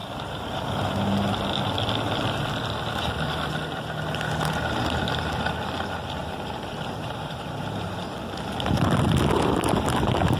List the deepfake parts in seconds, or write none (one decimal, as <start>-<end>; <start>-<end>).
6.2-8.0